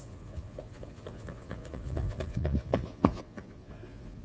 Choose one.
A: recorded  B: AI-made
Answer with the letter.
B